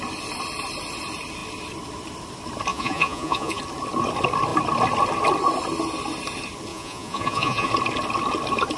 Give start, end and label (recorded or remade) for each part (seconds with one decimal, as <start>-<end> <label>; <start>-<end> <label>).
0.0-2.7 recorded; 2.7-3.6 remade; 3.6-6.7 recorded; 6.7-7.7 remade; 7.7-8.8 recorded